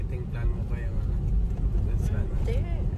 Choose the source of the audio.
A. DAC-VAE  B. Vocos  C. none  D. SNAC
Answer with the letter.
C